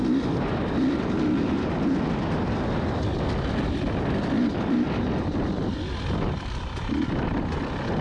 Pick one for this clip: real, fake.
real